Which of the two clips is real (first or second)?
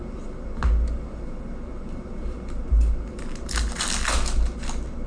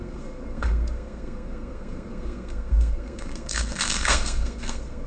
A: first